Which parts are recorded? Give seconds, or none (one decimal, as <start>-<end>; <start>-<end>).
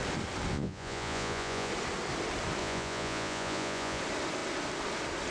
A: 0.0-0.5; 1.7-2.6; 4.0-5.3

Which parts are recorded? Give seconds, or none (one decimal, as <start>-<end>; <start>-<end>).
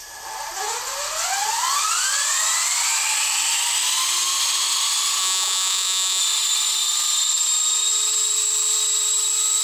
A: 0.0-5.2; 6.2-9.6